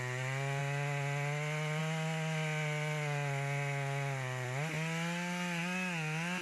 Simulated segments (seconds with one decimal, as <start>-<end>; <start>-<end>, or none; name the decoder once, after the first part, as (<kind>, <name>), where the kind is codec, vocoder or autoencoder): none